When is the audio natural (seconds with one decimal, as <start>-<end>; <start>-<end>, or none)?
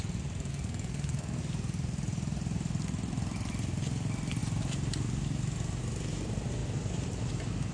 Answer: 0.0-0.5; 1.4-7.7